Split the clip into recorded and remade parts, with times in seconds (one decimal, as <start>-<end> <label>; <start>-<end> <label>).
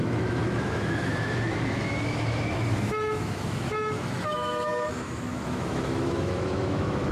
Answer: 0.0-7.1 remade